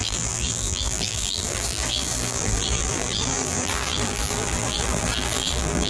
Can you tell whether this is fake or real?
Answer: fake